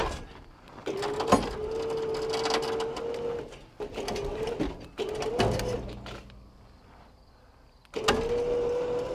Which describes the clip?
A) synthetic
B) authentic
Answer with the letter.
B